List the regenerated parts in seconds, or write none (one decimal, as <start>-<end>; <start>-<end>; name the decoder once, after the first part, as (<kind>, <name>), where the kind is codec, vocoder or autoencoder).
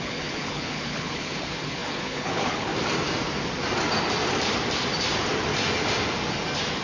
0.0-2.7 (codec, HILCodec)